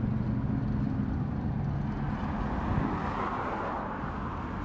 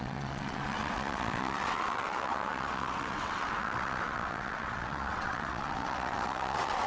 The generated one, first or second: second